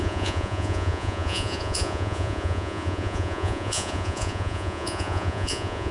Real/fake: fake